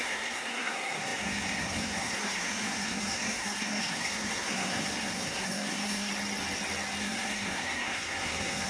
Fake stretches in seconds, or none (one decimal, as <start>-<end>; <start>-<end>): 0.0-6.1; 7.0-8.7